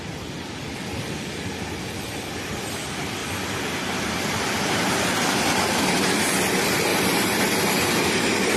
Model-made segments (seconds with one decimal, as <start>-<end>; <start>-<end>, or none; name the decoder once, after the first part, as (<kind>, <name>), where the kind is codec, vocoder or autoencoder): 0.0-3.2 (vocoder, BigVGAN v2); 4.2-8.6